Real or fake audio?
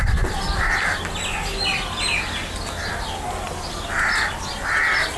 real